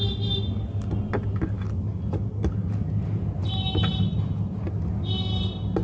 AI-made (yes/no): no